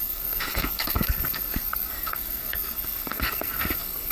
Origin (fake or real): fake